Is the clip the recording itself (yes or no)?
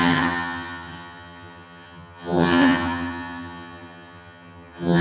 no